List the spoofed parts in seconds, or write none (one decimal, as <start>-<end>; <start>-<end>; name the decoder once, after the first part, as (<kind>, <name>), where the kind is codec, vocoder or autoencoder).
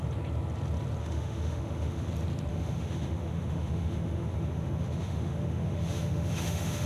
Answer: 1.0-2.1 (autoencoder, DAC-VAE); 2.5-6.9